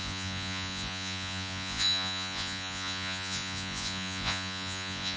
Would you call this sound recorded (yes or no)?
no